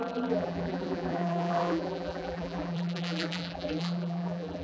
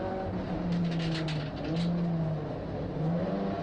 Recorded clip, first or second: second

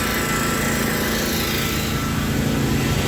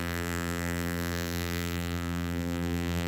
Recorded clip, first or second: first